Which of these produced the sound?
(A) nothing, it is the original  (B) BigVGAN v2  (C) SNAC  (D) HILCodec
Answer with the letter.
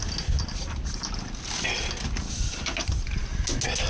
A